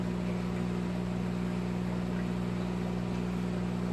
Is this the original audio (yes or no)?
yes